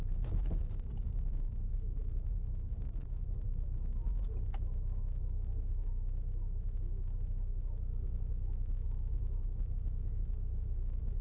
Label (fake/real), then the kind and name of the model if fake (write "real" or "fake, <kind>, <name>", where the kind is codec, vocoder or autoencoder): real